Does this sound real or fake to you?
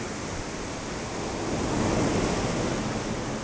real